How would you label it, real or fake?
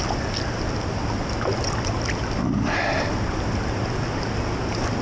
real